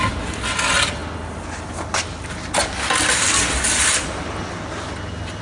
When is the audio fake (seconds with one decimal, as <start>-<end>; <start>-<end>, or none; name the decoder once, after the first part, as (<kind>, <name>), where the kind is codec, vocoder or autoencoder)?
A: none